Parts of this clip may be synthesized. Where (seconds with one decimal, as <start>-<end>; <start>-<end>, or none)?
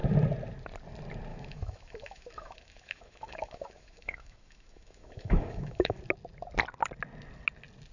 1.3-6.0